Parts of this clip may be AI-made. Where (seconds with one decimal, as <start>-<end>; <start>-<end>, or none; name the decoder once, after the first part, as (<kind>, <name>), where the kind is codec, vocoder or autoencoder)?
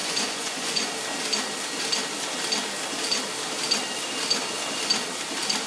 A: 0.0-0.9 (vocoder, Vocos)